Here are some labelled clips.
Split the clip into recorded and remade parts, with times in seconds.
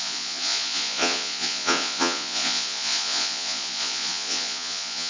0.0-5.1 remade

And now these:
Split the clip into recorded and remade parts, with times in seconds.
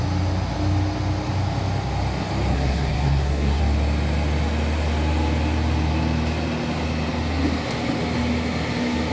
0.0-2.5 recorded; 2.5-3.6 remade; 3.6-9.1 recorded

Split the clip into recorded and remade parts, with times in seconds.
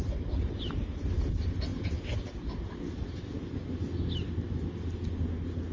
0.0-5.7 recorded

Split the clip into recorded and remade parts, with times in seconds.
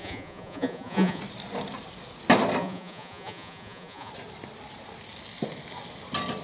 0.0-1.2 remade; 1.2-2.6 recorded; 2.6-4.1 remade; 4.1-6.4 recorded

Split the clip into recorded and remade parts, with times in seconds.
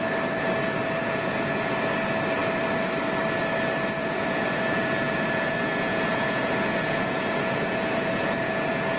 0.0-1.0 recorded; 1.0-1.8 remade; 1.8-4.0 recorded; 4.0-9.0 remade